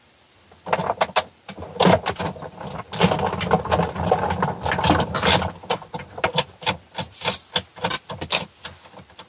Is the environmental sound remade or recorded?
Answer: recorded